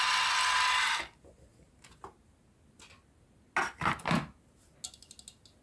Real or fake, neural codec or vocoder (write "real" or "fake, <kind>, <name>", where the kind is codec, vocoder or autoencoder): real